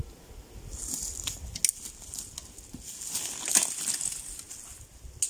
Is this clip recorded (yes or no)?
yes